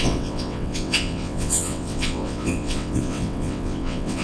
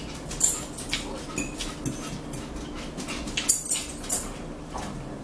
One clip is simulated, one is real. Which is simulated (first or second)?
first